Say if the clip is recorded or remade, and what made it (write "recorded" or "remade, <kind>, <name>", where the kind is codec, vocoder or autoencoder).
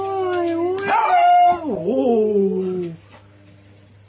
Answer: recorded